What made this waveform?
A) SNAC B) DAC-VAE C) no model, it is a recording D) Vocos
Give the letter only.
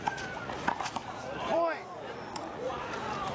D